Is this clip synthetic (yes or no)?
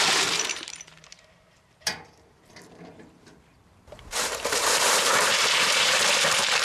yes